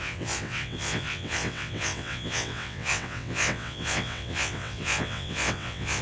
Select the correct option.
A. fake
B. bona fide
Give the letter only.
A